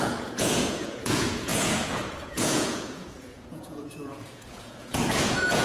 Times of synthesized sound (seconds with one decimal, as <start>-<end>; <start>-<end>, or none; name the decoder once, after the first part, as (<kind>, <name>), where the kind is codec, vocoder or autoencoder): 0.0-5.6 (vocoder, Vocos)